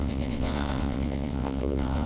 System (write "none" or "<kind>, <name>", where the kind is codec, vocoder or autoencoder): vocoder, WaveNeXt